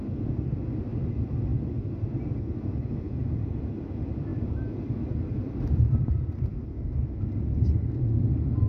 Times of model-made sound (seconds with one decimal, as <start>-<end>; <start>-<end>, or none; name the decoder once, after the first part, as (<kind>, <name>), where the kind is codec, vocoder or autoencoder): 4.3-6.8 (vocoder, BigVGAN v2)